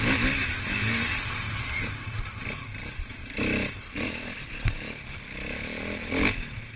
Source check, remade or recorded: recorded